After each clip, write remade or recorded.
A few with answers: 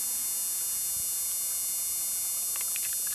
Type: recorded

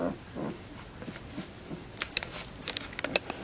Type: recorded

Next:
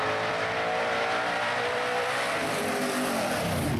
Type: remade